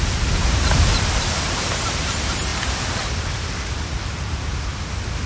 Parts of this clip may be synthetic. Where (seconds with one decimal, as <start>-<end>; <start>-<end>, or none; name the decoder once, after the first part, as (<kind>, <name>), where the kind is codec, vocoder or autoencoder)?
none